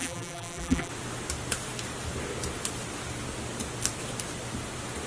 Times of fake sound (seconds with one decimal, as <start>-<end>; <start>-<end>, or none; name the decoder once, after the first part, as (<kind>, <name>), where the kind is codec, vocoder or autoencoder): 0.0-0.9 (vocoder, BigVGAN v2)